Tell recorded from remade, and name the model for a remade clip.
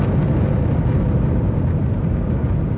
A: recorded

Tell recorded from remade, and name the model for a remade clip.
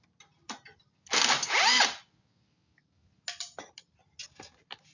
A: recorded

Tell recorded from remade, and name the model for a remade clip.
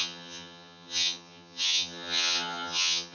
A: remade, vocoder, HiFi-GAN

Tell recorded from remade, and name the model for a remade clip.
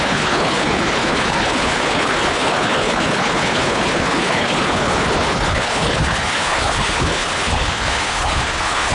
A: remade, codec, HILCodec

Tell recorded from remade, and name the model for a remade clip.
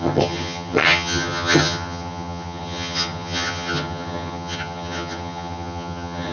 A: remade, vocoder, HiFi-GAN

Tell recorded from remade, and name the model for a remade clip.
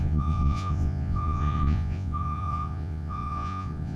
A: remade, vocoder, Vocos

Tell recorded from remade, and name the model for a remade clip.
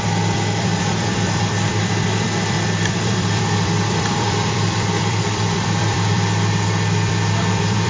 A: remade, vocoder, BigVGAN v2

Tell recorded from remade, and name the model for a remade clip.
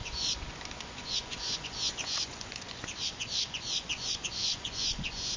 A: remade, vocoder, Vocos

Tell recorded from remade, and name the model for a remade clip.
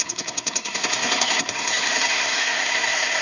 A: remade, codec, SNAC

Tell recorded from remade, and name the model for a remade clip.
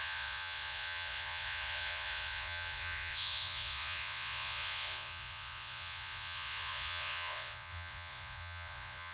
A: remade, vocoder, Vocos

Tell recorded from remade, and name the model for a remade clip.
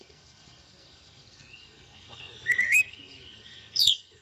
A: remade, codec, SNAC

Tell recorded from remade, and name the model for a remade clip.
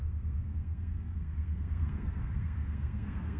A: remade, codec, SNAC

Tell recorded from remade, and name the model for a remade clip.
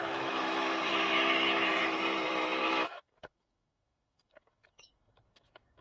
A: remade, autoencoder, DAC-VAE